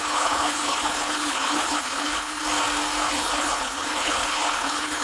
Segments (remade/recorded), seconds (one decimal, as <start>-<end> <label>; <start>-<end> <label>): 0.0-2.4 remade; 2.4-3.1 recorded; 3.1-5.0 remade